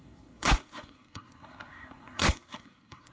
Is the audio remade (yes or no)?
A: yes